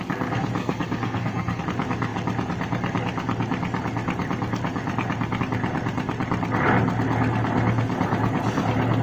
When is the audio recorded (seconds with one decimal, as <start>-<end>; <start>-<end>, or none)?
0.0-0.6; 1.6-9.0